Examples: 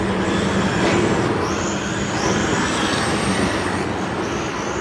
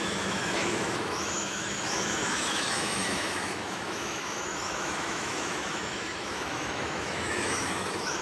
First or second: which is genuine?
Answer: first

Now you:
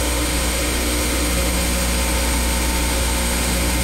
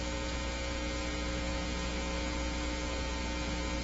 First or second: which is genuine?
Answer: second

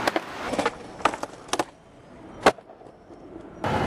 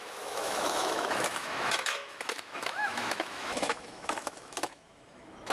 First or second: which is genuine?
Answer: first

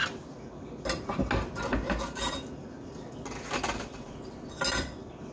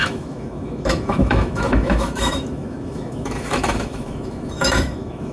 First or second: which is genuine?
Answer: first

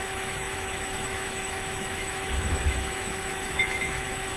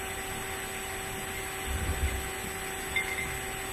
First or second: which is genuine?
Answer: second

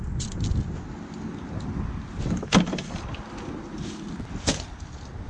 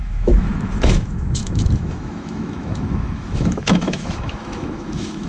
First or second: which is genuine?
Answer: first